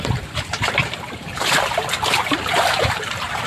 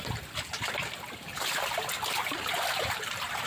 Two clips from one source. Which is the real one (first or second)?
second